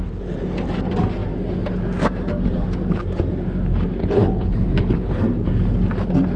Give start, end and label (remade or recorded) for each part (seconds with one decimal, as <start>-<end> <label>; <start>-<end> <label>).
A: 0.0-4.0 recorded; 4.0-5.2 remade; 5.2-6.4 recorded